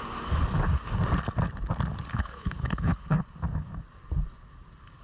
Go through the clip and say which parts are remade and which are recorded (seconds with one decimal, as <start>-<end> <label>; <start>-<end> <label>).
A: 0.0-2.1 recorded; 2.1-3.2 remade; 3.2-5.0 recorded